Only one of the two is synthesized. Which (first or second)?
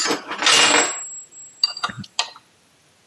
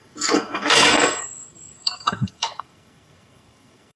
second